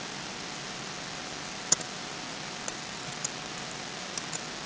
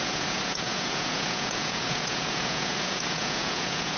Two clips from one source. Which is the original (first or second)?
first